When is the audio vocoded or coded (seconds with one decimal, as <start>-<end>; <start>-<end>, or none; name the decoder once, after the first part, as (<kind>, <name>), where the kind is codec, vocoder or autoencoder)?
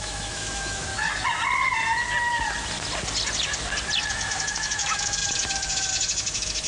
0.0-0.9 (autoencoder, DAC-VAE); 4.1-6.7